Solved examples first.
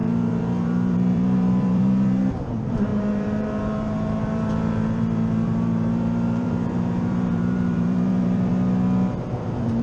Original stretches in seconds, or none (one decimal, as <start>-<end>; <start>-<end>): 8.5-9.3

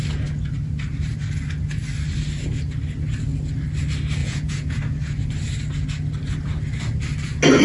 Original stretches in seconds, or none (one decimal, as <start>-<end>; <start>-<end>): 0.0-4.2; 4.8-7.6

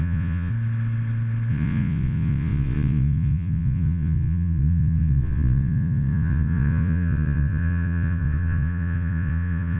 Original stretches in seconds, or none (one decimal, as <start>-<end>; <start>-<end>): 0.5-1.5